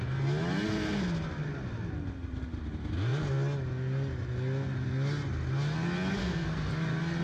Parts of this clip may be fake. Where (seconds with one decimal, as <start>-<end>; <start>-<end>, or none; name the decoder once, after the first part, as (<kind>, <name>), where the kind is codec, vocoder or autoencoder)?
6.2-6.7 (codec, SNAC)